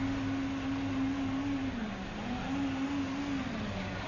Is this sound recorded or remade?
recorded